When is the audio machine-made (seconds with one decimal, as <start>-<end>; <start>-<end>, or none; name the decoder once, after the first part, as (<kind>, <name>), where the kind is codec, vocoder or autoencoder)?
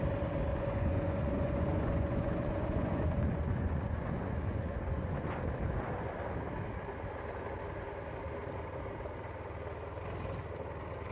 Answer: 0.5-5.4 (vocoder, Vocos)